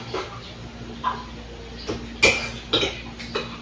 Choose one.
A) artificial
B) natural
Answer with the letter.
B